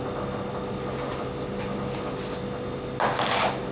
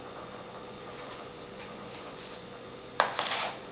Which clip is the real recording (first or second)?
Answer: first